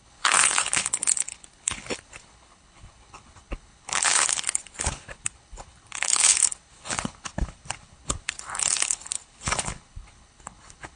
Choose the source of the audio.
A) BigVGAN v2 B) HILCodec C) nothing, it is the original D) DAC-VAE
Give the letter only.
B